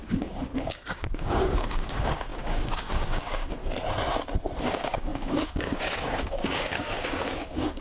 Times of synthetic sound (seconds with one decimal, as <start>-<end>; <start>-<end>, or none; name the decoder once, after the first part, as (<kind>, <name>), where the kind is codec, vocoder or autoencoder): 0.0-3.6 (codec, DAC); 4.6-7.8